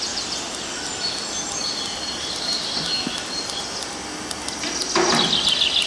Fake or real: real